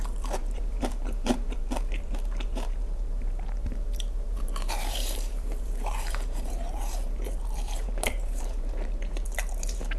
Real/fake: fake